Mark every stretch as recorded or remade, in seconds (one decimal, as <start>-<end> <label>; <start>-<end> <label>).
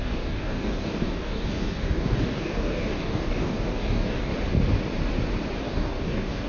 0.0-4.3 remade; 4.3-5.6 recorded; 5.6-6.5 remade